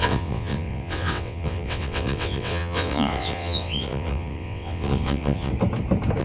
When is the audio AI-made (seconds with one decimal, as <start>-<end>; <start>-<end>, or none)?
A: 0.0-5.5